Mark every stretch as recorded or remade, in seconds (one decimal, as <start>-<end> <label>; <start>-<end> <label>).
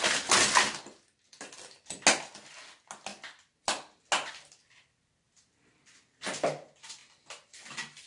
0.0-8.1 recorded